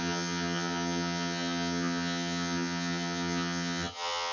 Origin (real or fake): fake